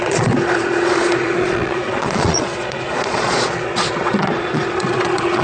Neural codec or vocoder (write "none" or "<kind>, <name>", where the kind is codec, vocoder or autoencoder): vocoder, Vocos